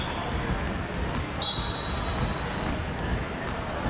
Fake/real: real